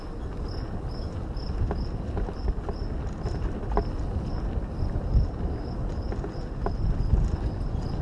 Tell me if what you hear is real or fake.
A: real